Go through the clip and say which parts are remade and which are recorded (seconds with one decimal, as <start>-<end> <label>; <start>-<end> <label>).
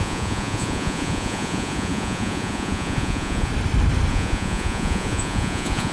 0.0-3.5 remade; 3.5-4.1 recorded; 4.1-5.9 remade